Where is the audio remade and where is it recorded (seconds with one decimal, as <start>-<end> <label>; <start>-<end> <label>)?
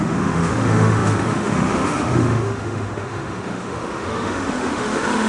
0.0-5.3 remade